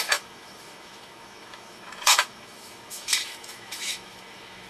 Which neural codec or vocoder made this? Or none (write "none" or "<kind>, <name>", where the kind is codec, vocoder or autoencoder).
autoencoder, DAC-VAE